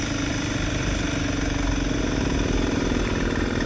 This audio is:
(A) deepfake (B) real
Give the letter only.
B